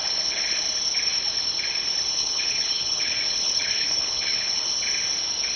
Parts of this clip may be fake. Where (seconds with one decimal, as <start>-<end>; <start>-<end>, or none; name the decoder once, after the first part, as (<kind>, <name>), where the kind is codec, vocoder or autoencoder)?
0.0-0.6 (codec, HILCodec); 2.1-4.7